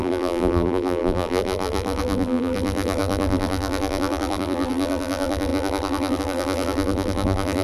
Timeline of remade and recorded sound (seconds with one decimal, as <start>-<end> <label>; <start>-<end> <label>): 0.0-7.6 remade